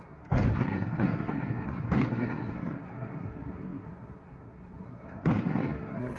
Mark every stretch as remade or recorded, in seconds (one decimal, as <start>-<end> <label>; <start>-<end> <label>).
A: 0.0-6.2 remade